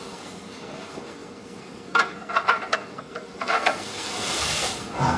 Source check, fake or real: fake